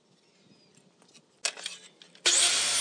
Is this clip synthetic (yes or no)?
no